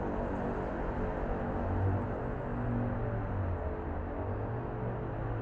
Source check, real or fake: real